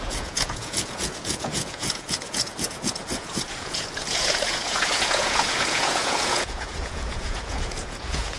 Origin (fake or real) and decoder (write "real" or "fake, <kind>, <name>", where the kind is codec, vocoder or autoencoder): fake, vocoder, Vocos